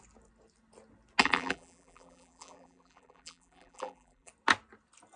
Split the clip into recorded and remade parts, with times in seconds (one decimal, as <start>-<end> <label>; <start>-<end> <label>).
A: 0.0-1.2 recorded; 1.2-4.3 remade; 4.3-5.2 recorded